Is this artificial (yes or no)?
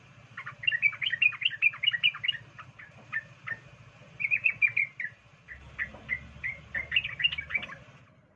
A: no